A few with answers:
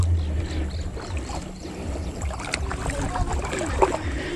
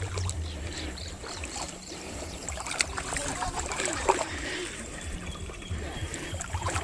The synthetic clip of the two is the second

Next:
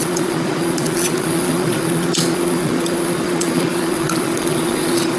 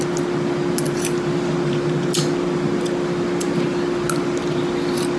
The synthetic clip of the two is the first